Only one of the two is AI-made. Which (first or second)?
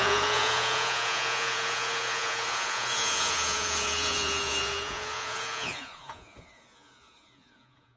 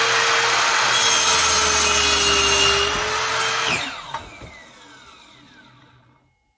first